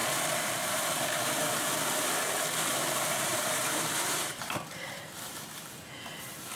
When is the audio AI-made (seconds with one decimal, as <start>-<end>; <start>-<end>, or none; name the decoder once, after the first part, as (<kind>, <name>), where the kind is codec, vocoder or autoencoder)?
3.3-5.1 (vocoder, BigVGAN v2)